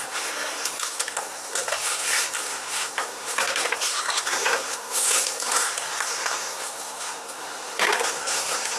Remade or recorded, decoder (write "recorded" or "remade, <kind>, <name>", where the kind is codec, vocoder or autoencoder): remade, codec, SNAC